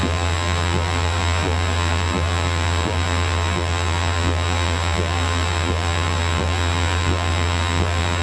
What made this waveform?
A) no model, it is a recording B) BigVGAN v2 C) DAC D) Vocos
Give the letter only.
B